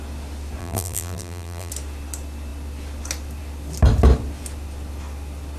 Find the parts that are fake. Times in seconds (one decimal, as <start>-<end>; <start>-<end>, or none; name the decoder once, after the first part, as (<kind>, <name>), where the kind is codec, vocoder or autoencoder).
0.6-1.7 (vocoder, BigVGAN v2)